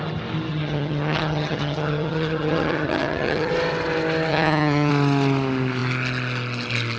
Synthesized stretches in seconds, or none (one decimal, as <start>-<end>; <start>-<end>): 0.5-3.5; 4.3-4.9